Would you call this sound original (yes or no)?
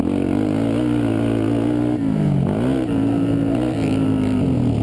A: yes